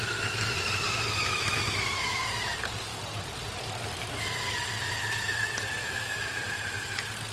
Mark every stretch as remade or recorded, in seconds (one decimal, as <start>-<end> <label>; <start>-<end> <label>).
0.0-1.2 recorded; 1.2-2.2 remade; 2.2-5.8 recorded; 5.8-6.4 remade; 6.4-7.3 recorded